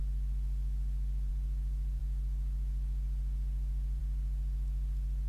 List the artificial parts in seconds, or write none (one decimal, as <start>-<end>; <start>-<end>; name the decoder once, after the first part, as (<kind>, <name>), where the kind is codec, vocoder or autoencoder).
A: 0.0-1.3 (vocoder, BigVGAN v2); 2.0-4.0